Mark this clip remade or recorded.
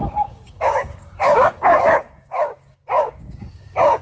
remade